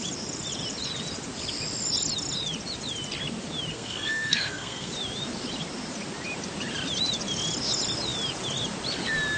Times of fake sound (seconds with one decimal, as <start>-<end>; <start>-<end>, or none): 3.7-4.9